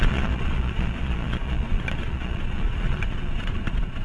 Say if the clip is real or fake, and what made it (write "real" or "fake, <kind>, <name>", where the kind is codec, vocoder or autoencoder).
fake, vocoder, Vocos